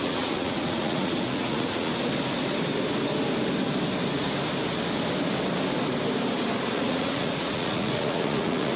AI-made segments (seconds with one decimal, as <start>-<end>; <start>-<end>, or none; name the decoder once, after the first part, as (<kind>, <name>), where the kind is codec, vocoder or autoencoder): 0.0-1.9 (vocoder, Vocos); 6.7-8.8